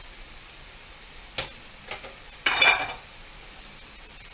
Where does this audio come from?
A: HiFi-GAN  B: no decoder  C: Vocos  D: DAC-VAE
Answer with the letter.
B